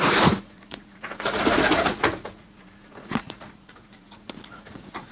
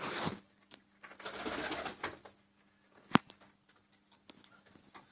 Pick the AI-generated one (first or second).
first